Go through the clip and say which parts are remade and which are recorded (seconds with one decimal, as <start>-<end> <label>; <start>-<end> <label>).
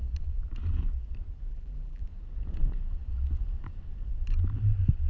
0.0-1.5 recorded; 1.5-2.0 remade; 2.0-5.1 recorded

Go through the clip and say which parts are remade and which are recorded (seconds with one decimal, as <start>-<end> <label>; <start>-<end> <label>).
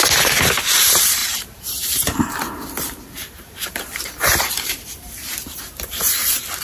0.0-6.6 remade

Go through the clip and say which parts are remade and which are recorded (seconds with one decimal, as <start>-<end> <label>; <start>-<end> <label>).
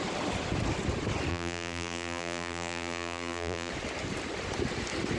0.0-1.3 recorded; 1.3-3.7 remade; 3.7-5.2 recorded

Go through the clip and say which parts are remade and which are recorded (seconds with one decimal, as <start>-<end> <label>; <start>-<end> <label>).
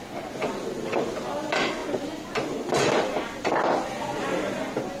0.0-5.0 recorded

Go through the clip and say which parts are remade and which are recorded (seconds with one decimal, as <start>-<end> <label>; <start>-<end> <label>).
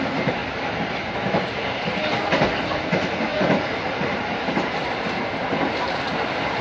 0.0-3.3 recorded; 3.3-5.0 remade; 5.0-6.6 recorded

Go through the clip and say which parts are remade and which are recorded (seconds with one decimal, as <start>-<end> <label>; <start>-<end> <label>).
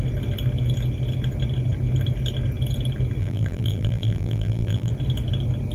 0.0-3.2 recorded; 3.2-4.9 remade; 4.9-5.7 recorded